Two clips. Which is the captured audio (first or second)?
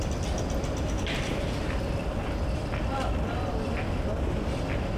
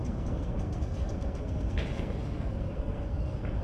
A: first